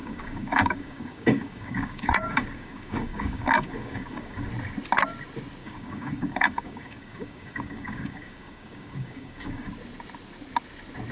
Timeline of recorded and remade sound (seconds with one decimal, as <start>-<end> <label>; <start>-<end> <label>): 0.0-4.5 remade; 4.5-5.6 recorded; 5.6-9.7 remade; 9.7-11.1 recorded